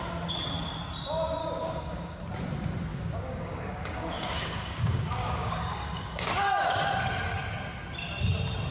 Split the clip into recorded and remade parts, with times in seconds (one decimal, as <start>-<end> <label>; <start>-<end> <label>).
0.0-1.4 recorded; 1.4-2.2 remade; 2.2-2.9 recorded; 2.9-6.3 remade; 6.3-8.7 recorded